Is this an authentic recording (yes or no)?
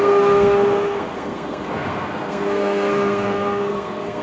no